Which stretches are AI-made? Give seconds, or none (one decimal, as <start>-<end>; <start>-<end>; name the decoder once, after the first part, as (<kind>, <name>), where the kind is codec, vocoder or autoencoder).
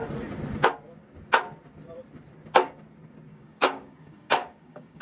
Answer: 3.3-5.0 (codec, DAC)